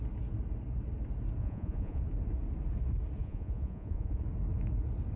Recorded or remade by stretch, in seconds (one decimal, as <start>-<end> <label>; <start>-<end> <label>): 0.0-1.4 recorded; 1.4-2.0 remade; 2.0-3.2 recorded; 3.2-4.2 remade; 4.2-5.2 recorded